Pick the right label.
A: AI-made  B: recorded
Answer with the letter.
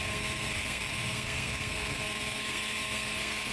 A